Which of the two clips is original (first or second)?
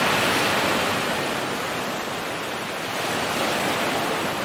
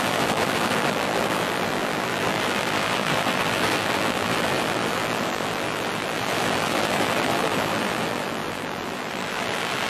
first